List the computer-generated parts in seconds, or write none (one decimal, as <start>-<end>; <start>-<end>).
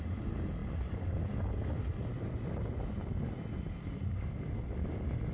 none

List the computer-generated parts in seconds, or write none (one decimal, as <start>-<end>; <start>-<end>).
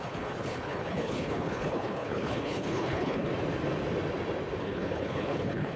0.0-3.3; 4.6-5.8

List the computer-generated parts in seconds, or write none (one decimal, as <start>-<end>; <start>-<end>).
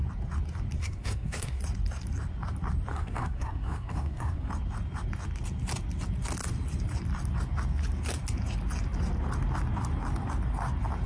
0.8-1.6; 2.9-4.5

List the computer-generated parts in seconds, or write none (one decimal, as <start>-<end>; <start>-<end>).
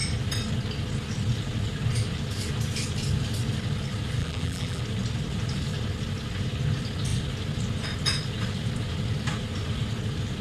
4.2-4.8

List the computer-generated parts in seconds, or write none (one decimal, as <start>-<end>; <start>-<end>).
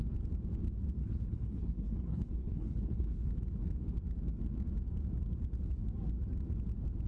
1.0-3.3